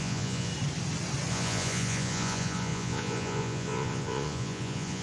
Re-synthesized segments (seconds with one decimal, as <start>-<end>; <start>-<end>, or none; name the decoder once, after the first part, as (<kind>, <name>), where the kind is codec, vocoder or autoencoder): 0.0-0.5 (vocoder, Vocos); 1.3-5.0